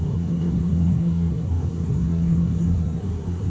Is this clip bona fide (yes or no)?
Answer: no